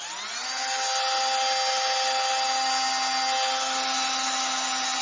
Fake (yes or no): no